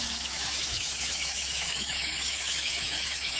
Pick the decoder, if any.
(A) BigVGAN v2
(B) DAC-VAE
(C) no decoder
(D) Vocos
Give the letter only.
B